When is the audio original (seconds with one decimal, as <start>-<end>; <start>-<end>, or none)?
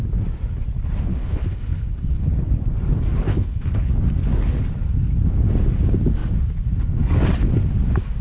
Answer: 0.0-1.1; 2.4-3.3; 3.9-8.2